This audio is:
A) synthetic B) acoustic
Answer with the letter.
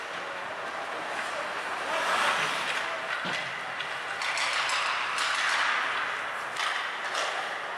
B